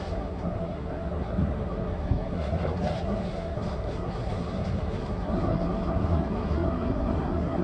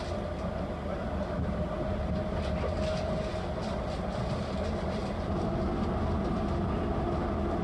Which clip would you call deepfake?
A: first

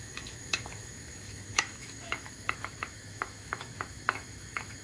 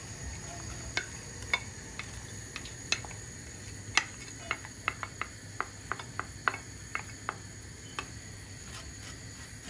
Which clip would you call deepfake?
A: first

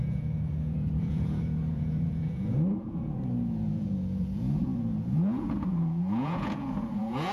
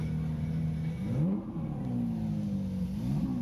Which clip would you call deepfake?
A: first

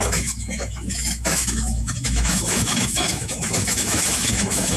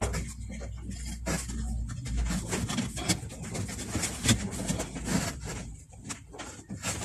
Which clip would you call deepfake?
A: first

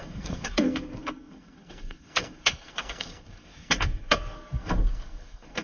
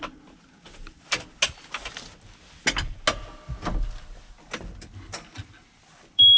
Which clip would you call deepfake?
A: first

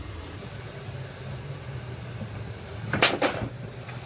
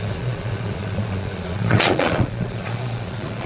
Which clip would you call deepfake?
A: second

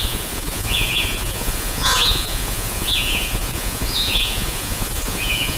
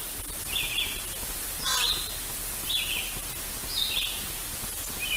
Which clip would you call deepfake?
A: first